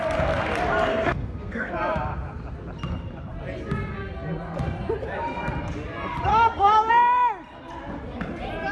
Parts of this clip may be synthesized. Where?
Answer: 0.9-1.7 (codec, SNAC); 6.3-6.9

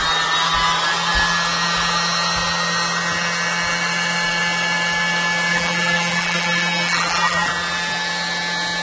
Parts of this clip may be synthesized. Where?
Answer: 5.5-7.5 (vocoder, BigVGAN v2)

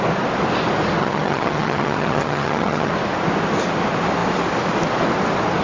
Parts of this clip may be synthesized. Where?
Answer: 1.0-2.9 (vocoder, HiFi-GAN)

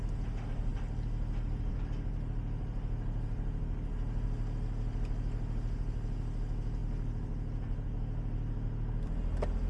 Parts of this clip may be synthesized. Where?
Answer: none

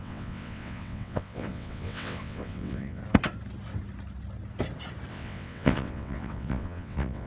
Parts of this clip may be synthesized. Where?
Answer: 0.0-3.0 (vocoder, WaveNeXt); 5.1-7.3

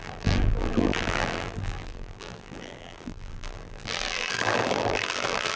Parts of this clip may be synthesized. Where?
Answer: 0.0-5.6 (vocoder, BigVGAN v2)

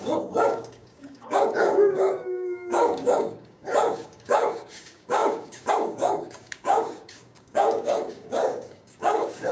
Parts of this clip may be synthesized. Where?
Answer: 0.0-9.5 (codec, DAC)

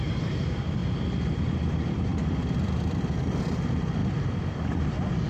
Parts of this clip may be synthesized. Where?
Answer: 0.0-0.8 (vocoder, BigVGAN v2); 1.4-5.3